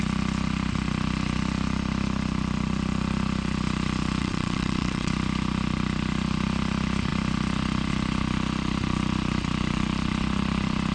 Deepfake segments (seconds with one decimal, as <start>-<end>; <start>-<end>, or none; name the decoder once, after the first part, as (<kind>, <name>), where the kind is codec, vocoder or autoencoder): 4.2-5.1 (vocoder, WaveNeXt)